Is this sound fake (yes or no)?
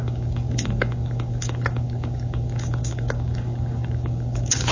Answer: yes